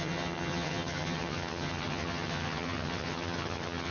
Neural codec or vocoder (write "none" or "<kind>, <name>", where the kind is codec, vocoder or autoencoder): vocoder, HiFi-GAN